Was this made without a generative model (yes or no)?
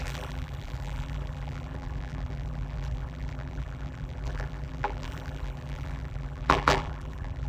no